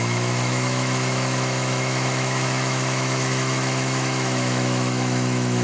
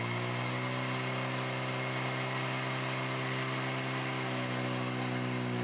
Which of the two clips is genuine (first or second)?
second